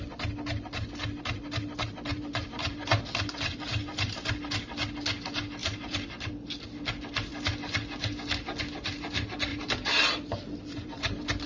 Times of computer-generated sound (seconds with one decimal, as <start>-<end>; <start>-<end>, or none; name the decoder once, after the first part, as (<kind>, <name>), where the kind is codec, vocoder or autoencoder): 2.1-4.5 (vocoder, BigVGAN v2); 5.6-6.3; 9.5-11.5